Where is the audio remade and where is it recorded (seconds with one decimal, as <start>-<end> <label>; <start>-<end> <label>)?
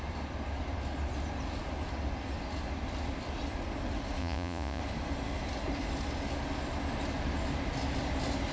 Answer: 0.0-4.2 recorded; 4.2-4.8 remade; 4.8-8.5 recorded